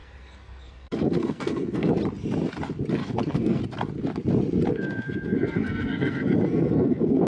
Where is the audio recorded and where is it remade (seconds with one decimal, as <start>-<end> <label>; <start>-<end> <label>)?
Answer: 0.0-1.9 remade; 1.9-3.0 recorded; 3.0-3.6 remade; 3.6-4.7 recorded; 4.7-7.3 remade